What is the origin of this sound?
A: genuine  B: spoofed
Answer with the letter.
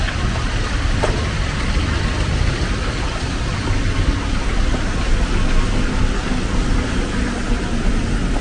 A